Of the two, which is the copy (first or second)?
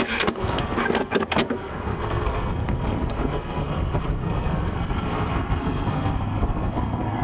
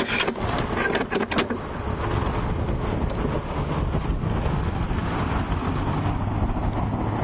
first